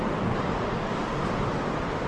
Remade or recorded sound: recorded